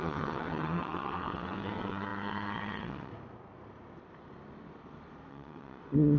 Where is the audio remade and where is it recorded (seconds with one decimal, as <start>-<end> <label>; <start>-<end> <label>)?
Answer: 0.0-3.1 remade; 3.1-5.3 recorded; 5.3-6.2 remade